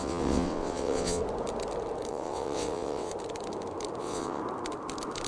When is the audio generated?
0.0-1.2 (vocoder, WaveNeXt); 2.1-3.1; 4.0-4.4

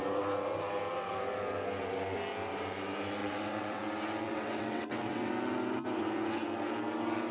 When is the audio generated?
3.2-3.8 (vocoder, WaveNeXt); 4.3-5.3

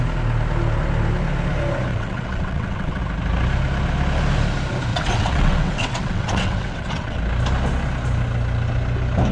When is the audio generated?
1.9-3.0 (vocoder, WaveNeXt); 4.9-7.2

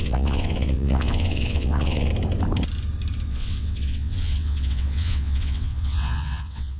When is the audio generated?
0.0-2.1 (vocoder, WaveNeXt); 3.3-6.8

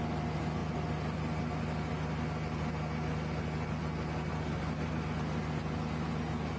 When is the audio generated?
none

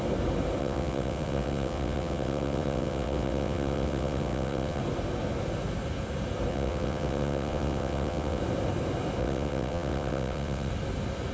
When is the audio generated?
0.6-4.8 (vocoder, WaveNeXt); 6.5-8.4; 9.2-10.7

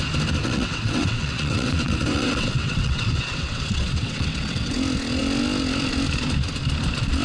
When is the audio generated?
0.4-4.7 (vocoder, WaveNeXt)